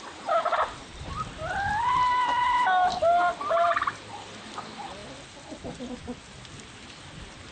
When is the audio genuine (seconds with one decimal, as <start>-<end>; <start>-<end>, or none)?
0.0-7.5